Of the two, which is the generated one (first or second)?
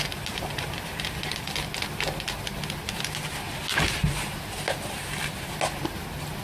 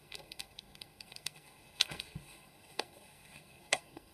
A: second